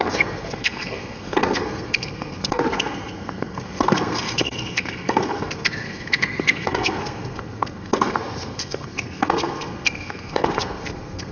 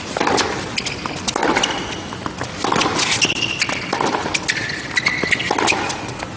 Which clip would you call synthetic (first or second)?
first